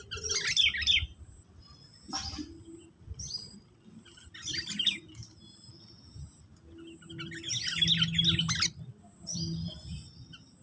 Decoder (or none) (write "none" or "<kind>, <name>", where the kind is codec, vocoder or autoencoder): none